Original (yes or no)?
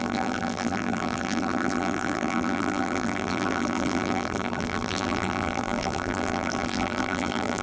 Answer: no